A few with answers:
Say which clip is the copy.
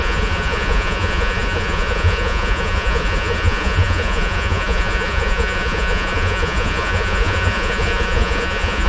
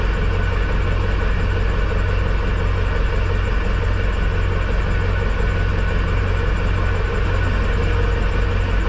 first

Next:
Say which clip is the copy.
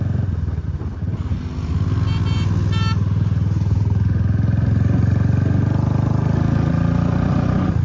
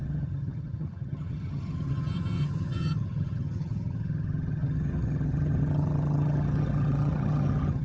second